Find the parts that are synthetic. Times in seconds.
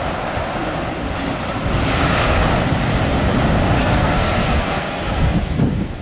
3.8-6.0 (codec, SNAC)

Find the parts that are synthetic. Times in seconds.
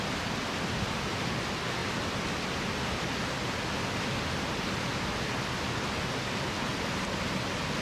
none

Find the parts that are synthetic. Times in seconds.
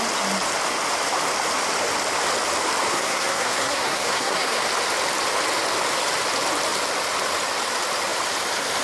2.9-4.6 (codec, SNAC)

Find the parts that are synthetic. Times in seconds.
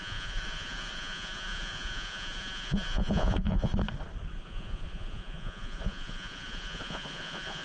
0.0-3.7 (vocoder, Vocos); 4.4-7.6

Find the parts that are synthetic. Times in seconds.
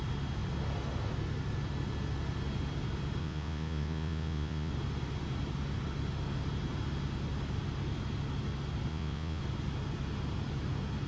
3.2-4.7 (vocoder, Vocos); 8.9-9.4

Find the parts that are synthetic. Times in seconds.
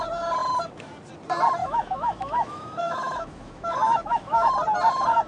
1.6-4.5 (autoencoder, DAC-VAE)